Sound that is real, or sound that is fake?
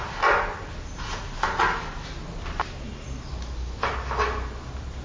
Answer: real